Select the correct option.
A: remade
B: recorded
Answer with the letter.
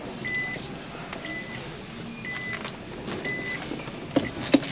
B